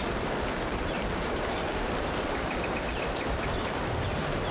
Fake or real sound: real